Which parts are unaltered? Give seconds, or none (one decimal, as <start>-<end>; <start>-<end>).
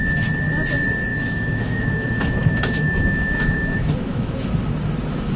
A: 0.0-1.1; 4.3-5.4